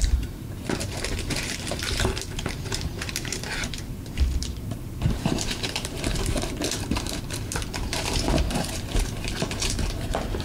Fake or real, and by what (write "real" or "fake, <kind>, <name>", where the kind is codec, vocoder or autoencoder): fake, vocoder, BigVGAN v2